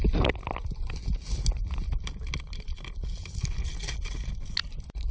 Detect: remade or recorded recorded